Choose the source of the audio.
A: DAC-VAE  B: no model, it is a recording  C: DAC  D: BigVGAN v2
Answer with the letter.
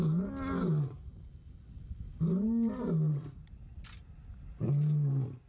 B